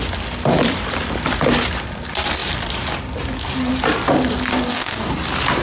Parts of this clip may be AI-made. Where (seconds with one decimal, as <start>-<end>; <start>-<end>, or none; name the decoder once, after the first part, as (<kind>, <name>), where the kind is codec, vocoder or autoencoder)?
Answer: 4.5-5.1 (codec, DAC)